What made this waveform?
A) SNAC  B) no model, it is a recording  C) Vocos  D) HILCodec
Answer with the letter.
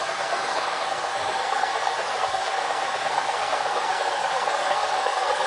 A